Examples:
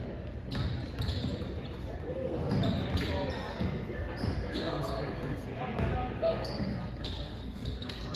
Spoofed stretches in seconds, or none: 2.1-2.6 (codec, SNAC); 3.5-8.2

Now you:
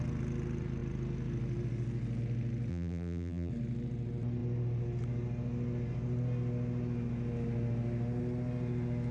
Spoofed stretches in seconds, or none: 2.7-3.5 (vocoder, BigVGAN v2)

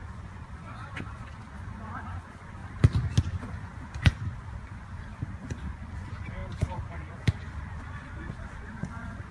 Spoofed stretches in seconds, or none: 0.0-2.6 (vocoder, Vocos); 3.2-9.3

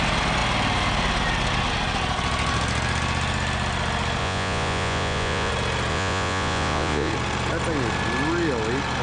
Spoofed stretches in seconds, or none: 4.2-5.5 (vocoder, Vocos); 5.9-7.1

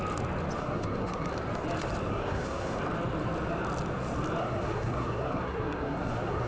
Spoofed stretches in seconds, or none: 0.6-1.3 (codec, SNAC); 2.1-2.8; 4.4-6.5

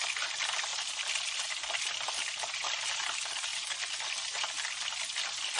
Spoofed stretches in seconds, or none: 3.5-4.1 (vocoder, BigVGAN v2)

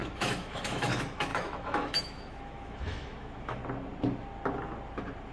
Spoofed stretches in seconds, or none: 0.0-3.6 (autoencoder, DAC-VAE)

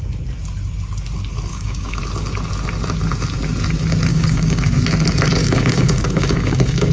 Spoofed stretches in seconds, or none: 1.5-2.0 (codec, DAC); 4.1-4.8; 5.4-6.9